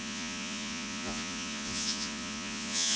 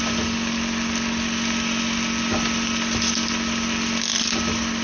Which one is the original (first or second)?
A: second